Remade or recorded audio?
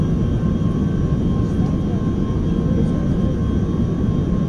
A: recorded